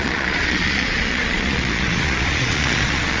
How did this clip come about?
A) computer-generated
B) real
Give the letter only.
A